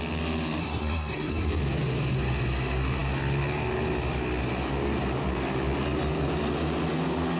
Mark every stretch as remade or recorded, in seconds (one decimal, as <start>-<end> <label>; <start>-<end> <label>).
0.0-0.6 recorded; 0.6-1.5 remade; 1.5-7.4 recorded